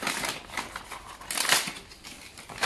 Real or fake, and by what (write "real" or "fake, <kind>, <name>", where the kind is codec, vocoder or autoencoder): real